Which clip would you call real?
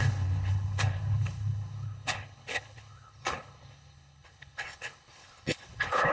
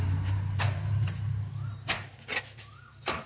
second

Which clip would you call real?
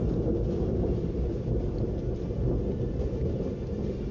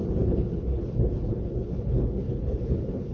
first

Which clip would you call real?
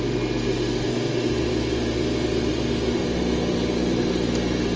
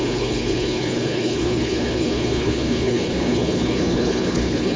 first